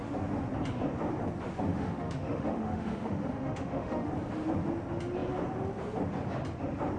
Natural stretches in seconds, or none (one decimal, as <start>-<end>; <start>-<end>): 0.0-1.7; 4.1-7.0

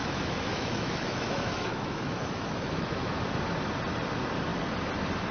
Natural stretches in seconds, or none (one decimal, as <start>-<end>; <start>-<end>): 3.1-5.3